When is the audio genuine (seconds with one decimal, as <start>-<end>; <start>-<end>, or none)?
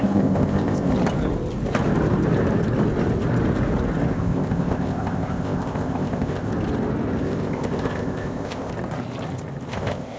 0.9-4.1; 6.5-7.2; 8.7-9.7